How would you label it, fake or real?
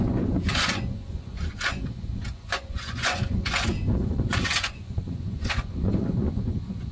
fake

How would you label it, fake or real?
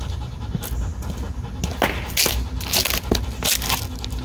real